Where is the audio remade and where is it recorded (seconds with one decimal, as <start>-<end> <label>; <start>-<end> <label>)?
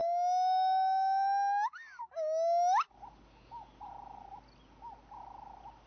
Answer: 0.0-5.9 recorded